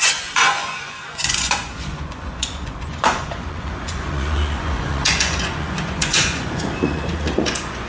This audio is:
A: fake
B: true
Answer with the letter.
A